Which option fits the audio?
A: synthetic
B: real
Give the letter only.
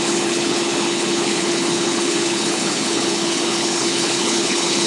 A